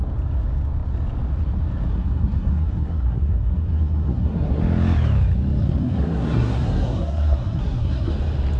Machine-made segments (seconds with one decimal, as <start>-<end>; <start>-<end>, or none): 1.9-4.6; 5.6-8.1